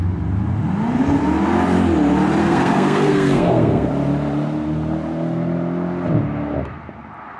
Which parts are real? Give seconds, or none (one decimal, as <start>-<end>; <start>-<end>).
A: 0.0-2.4; 3.9-7.4